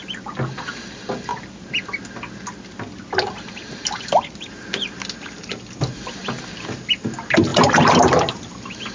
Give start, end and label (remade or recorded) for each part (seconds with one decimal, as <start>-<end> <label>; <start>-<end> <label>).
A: 0.0-8.9 recorded